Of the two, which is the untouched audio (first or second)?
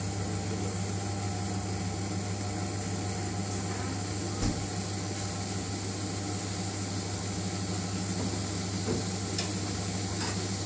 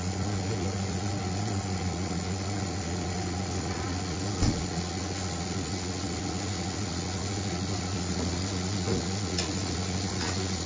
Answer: first